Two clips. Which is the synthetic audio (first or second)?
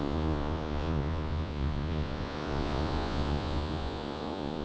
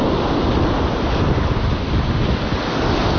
first